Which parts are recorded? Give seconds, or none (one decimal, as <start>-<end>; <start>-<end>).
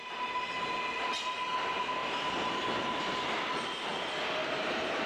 0.0-2.0; 3.2-4.4